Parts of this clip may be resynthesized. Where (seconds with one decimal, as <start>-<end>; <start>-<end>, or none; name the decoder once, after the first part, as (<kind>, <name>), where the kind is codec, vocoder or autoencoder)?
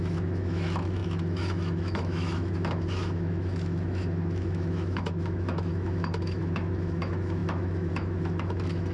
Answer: 0.0-8.9 (autoencoder, DAC-VAE)